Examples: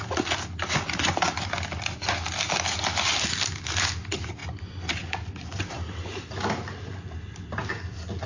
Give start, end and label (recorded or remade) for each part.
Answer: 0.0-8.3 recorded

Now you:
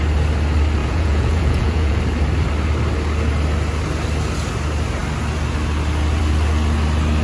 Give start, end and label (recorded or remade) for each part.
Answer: 0.0-0.8 recorded; 0.8-2.0 remade; 2.0-7.2 recorded

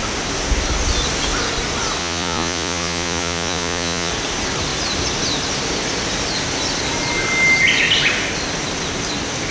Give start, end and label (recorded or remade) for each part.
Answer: 0.0-2.0 recorded; 2.0-4.1 remade; 4.1-9.5 recorded

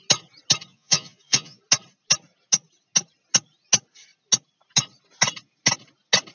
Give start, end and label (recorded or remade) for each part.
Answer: 0.0-0.7 recorded; 0.7-1.6 remade; 1.6-6.3 recorded

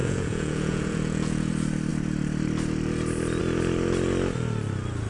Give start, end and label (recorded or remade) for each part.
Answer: 0.0-1.5 remade; 1.5-5.1 recorded